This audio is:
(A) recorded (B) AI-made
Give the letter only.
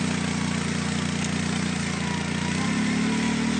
A